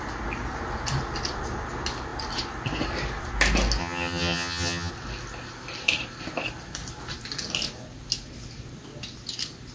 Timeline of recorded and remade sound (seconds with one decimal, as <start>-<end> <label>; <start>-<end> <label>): 0.0-3.8 recorded; 3.8-4.9 remade; 4.9-9.7 recorded